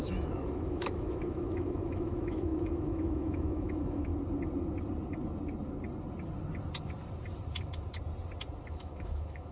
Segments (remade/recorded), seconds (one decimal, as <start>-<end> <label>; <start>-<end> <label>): 0.0-4.1 remade; 4.1-8.7 recorded; 8.7-9.5 remade